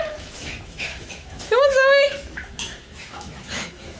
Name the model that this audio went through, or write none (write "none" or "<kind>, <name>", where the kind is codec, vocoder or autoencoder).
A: autoencoder, DAC-VAE